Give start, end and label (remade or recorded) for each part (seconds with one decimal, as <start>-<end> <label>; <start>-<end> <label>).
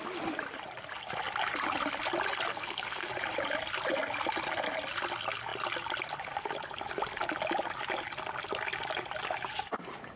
0.0-2.5 recorded; 2.5-3.1 remade; 3.1-10.2 recorded